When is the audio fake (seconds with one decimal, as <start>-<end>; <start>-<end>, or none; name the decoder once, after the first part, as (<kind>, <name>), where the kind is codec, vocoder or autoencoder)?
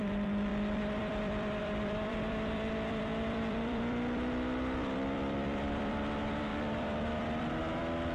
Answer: 0.0-8.1 (vocoder, BigVGAN v2)